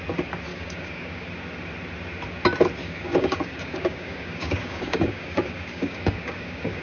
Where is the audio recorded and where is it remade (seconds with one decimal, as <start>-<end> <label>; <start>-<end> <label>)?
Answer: 0.0-0.5 recorded; 0.5-1.3 remade; 1.3-2.8 recorded; 2.8-6.8 remade